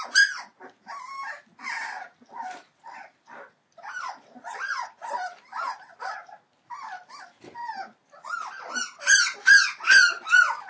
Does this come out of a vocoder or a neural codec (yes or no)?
no